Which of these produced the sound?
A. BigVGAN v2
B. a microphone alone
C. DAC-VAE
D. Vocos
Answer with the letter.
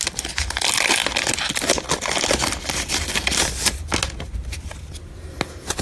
B